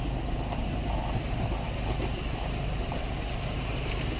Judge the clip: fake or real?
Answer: real